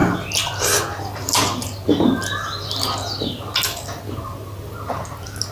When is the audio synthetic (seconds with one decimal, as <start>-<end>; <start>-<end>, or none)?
none